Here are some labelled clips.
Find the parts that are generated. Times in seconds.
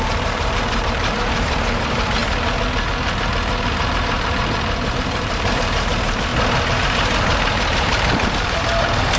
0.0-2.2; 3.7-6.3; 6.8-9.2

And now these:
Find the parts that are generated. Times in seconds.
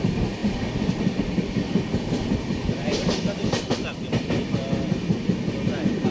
none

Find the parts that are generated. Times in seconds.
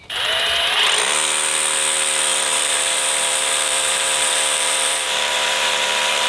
2.3-6.3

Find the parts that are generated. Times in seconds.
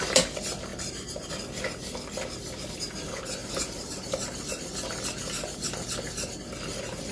0.7-1.3; 3.4-4.5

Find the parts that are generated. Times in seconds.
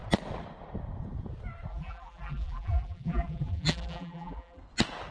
1.7-4.6